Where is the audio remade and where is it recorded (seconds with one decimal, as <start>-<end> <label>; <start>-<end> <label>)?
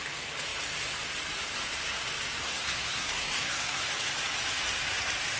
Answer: 0.0-2.4 recorded; 2.4-3.9 remade; 3.9-5.4 recorded